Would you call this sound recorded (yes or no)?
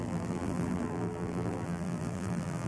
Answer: no